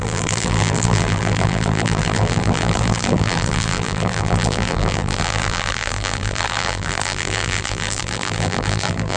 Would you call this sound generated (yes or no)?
yes